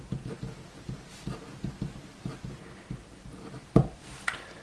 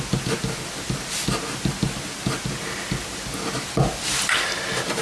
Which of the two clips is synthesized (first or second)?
first